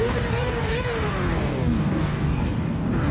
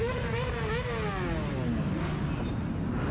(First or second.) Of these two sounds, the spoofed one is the first